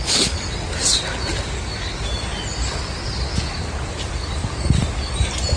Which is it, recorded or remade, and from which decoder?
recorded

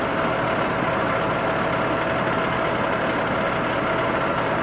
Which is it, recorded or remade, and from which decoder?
recorded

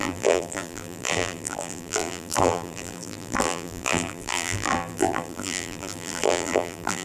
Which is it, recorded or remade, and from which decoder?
remade, vocoder, BigVGAN v2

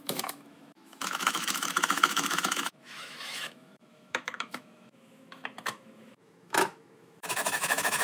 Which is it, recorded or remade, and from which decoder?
remade, autoencoder, DAC-VAE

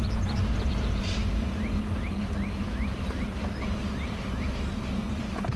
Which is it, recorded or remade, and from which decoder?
recorded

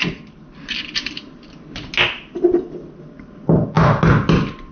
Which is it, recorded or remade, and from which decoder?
recorded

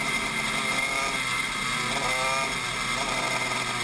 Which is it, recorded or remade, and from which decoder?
recorded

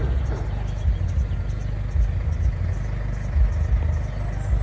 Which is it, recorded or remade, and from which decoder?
recorded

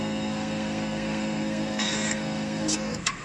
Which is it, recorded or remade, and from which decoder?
remade, codec, SNAC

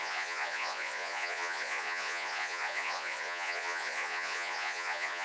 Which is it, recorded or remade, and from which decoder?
remade, vocoder, Vocos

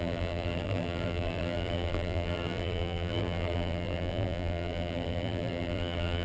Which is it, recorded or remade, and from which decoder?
remade, vocoder, BigVGAN v2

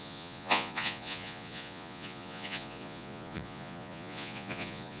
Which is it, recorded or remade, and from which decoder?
remade, vocoder, Vocos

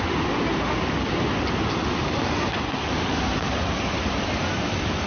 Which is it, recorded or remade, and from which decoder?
recorded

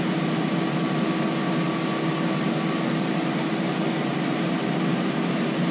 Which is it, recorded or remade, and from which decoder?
recorded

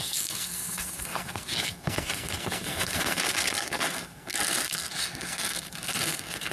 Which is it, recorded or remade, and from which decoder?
remade, codec, SNAC